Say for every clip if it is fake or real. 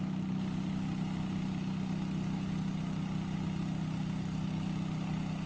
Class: real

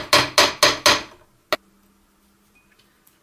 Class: real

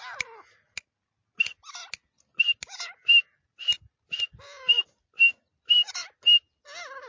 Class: real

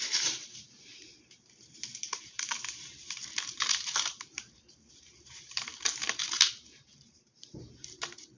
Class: fake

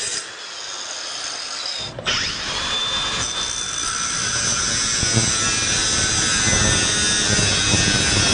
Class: real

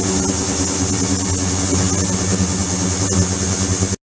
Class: real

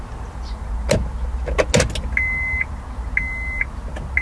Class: real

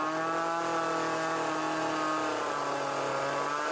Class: real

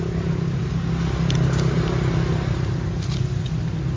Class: real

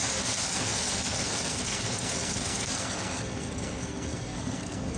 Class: fake